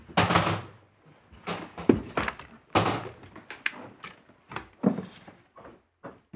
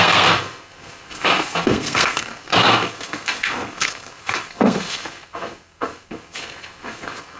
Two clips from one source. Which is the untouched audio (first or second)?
first